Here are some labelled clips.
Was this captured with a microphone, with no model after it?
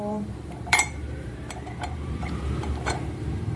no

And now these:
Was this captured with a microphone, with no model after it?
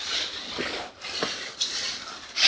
yes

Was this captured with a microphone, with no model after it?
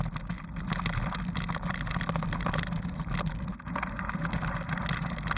yes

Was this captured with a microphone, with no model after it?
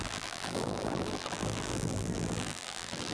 no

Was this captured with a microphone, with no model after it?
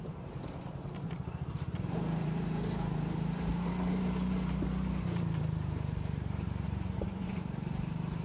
no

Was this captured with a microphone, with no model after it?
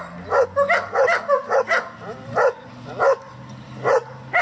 yes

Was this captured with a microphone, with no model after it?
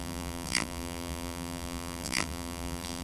no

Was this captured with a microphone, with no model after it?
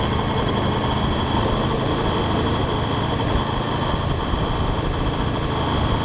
yes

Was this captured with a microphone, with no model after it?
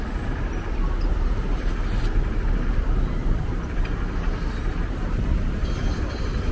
no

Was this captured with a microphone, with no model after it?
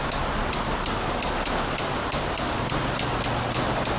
yes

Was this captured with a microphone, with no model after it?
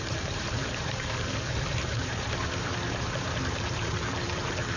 no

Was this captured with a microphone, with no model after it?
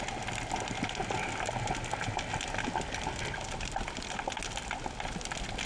yes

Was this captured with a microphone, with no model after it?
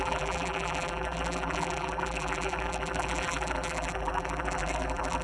no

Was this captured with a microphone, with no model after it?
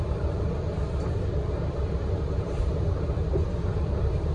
no